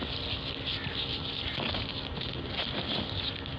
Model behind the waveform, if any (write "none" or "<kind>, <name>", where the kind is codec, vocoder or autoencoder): none